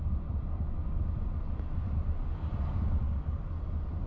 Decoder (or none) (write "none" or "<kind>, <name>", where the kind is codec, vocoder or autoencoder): none